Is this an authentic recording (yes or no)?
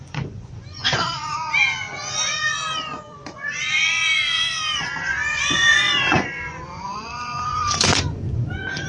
no